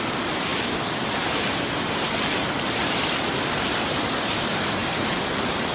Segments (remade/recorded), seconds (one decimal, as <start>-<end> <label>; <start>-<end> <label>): 0.0-0.5 recorded; 0.5-3.6 remade; 3.6-5.7 recorded